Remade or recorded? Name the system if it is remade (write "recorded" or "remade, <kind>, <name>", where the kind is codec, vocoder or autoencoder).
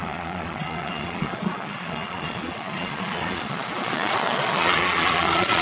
remade, vocoder, Vocos